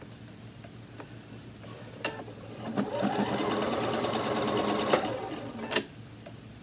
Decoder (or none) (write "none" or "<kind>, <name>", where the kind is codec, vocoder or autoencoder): none